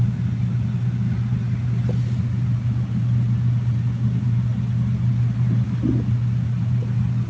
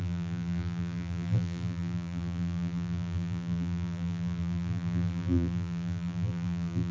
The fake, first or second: second